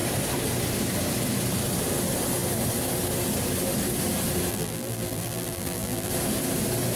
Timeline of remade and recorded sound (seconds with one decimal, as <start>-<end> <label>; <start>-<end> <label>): 0.0-4.5 recorded; 4.5-6.1 remade; 6.1-7.0 recorded

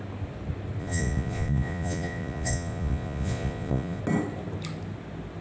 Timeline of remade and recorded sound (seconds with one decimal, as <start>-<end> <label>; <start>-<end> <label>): 0.0-0.8 recorded; 0.8-4.0 remade; 4.0-5.4 recorded

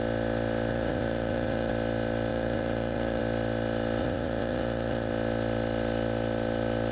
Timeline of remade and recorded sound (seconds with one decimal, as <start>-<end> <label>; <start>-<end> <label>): 0.0-0.7 recorded; 0.7-1.7 remade; 1.7-2.3 recorded; 2.3-3.2 remade; 3.2-4.0 recorded; 4.0-5.1 remade; 5.1-6.9 recorded

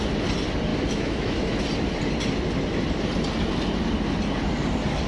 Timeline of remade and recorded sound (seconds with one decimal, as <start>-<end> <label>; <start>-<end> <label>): 0.0-0.7 recorded; 0.7-1.6 remade; 1.6-5.1 recorded

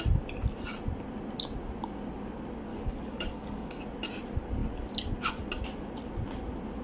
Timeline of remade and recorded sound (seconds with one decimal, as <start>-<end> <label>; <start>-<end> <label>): 0.0-2.7 recorded; 2.7-3.8 remade; 3.8-6.8 recorded

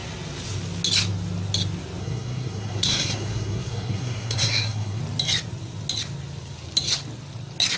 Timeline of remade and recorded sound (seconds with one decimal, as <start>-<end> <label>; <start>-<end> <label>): 0.0-2.0 recorded; 2.0-5.0 remade; 5.0-7.8 recorded